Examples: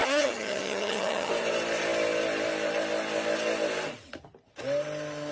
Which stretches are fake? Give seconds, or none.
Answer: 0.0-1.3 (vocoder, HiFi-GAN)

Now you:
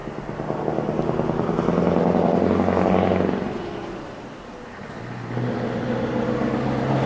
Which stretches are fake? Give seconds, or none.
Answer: none

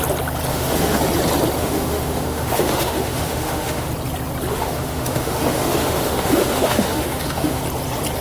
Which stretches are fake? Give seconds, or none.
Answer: 0.5-1.0 (autoencoder, DAC-VAE); 1.6-3.9; 4.5-7.6

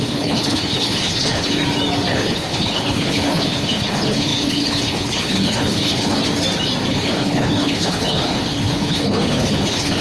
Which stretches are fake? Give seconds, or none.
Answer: 0.0-1.6 (codec, HILCodec); 2.1-6.2; 6.9-10.0